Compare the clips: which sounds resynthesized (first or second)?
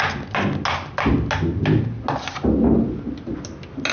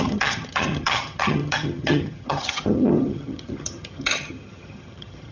second